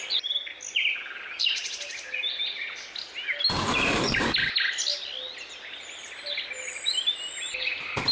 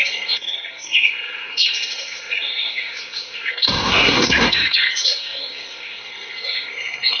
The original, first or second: first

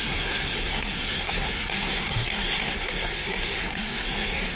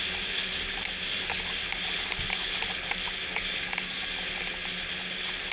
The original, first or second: second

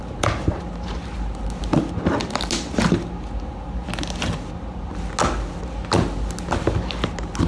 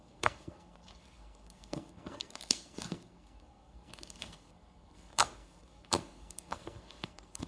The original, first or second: first